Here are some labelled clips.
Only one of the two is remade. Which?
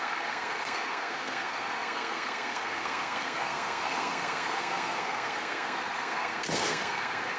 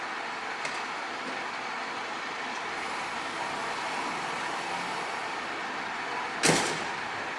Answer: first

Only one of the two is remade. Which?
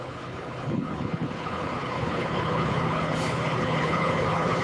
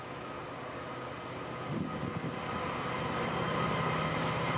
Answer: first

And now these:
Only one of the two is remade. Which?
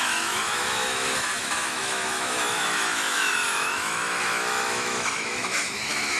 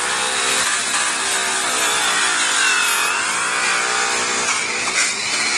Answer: first